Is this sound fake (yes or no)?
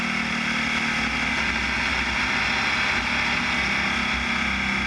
no